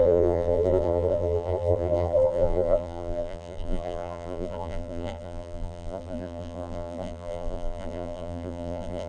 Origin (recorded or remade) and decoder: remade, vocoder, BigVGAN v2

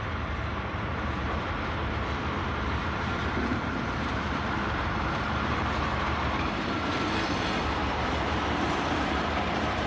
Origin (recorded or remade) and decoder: remade, vocoder, BigVGAN v2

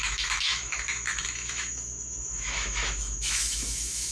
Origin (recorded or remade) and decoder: remade, autoencoder, DAC-VAE